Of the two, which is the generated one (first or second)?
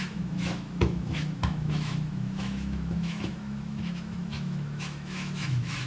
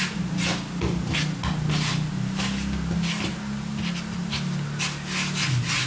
first